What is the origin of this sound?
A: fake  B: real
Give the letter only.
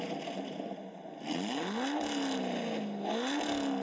B